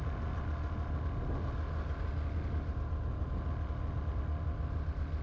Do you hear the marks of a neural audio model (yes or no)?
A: no